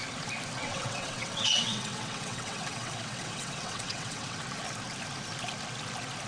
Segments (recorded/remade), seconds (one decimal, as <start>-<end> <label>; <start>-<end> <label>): 0.0-0.6 recorded; 0.6-4.4 remade; 4.4-6.3 recorded